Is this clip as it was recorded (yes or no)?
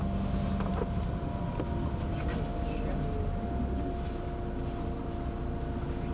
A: yes